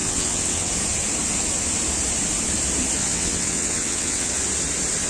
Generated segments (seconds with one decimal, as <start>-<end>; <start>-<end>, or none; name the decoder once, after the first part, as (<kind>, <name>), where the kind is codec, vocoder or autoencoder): 0.0-0.7 (vocoder, WaveNeXt); 3.0-4.3